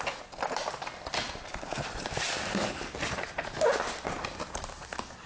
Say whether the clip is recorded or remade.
recorded